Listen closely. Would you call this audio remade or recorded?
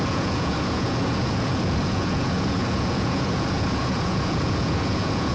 remade